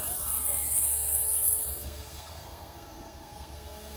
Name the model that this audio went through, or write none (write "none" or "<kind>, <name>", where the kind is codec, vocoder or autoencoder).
codec, SNAC